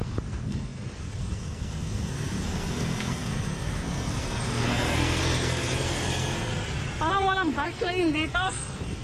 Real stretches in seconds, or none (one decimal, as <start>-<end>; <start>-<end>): 6.5-7.1